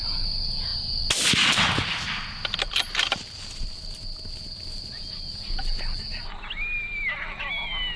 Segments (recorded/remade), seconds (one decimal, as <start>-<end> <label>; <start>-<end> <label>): 0.0-8.0 recorded